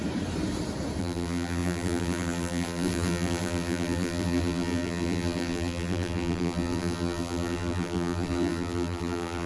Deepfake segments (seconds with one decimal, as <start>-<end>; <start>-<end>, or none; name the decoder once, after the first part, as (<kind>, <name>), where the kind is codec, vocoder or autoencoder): 1.0-9.5 (vocoder, BigVGAN v2)